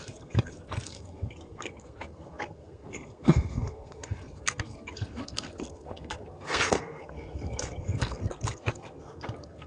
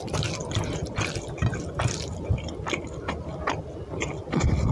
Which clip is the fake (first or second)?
first